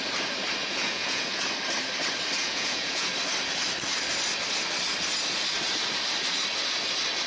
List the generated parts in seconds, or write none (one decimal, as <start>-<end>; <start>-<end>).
0.6-1.4; 2.4-3.1